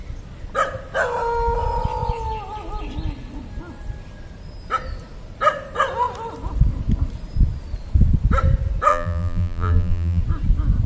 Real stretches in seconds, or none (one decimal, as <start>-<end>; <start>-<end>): 0.0-8.9; 10.2-10.9